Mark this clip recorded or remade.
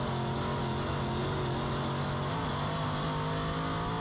recorded